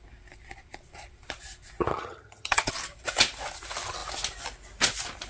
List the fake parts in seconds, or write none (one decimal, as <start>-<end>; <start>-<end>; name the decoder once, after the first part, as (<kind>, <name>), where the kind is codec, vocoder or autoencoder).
1.9-2.7 (vocoder, HiFi-GAN)